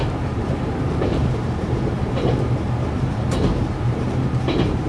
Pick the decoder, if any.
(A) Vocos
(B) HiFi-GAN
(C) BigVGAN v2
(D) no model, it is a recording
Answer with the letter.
C